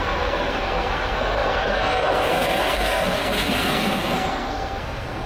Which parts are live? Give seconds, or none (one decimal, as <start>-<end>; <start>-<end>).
none